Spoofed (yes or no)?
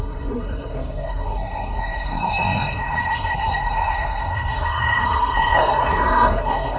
yes